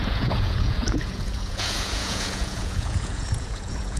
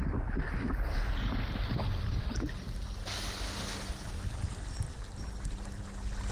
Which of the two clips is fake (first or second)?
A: first